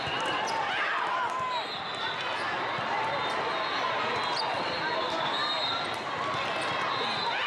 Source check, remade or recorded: recorded